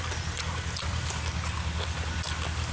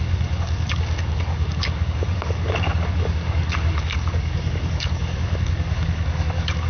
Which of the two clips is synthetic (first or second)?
second